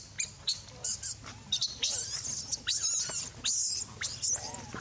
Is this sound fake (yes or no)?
no